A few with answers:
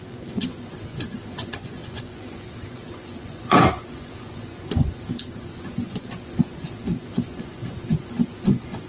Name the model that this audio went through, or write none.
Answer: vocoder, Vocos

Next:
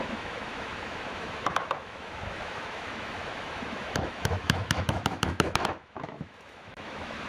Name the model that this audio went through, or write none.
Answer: autoencoder, DAC-VAE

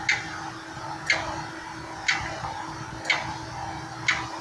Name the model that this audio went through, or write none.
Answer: none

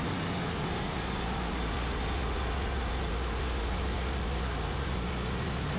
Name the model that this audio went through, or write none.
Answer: none